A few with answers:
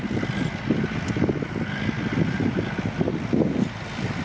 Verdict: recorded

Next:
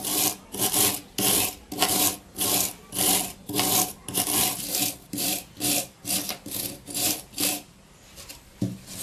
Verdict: remade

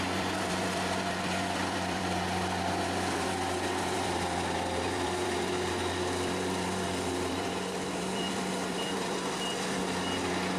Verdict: remade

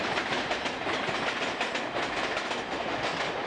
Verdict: remade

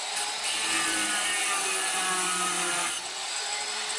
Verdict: remade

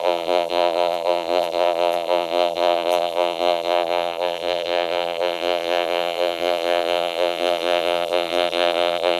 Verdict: remade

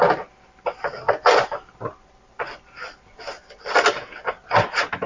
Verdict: remade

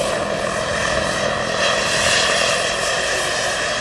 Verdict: remade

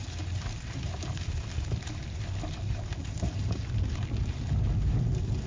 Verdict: recorded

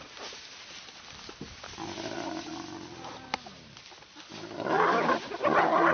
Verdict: recorded